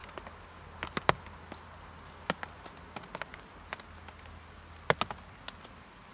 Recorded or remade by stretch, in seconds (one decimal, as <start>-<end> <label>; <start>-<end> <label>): 0.0-6.1 recorded